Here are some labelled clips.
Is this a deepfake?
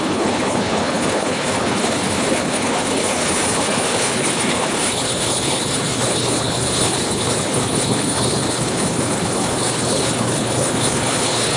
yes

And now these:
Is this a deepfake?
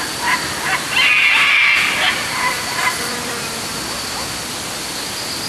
no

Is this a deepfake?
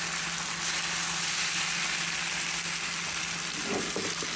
no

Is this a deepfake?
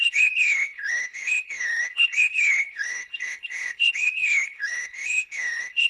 yes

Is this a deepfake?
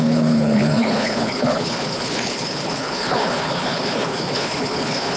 yes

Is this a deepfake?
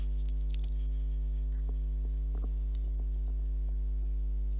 no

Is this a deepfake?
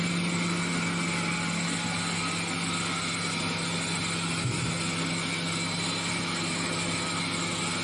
no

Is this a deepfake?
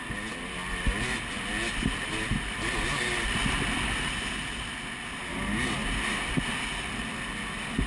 no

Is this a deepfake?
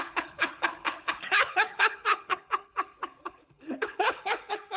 yes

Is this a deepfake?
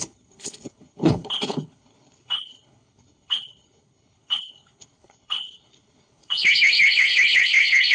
yes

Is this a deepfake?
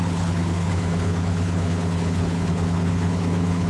yes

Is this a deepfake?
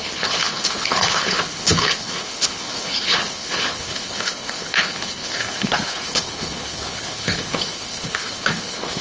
yes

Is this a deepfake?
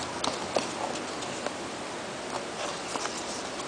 no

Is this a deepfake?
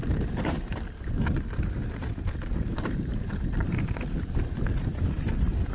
no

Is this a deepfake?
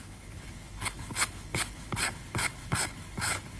yes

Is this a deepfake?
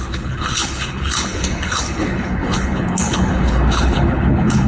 yes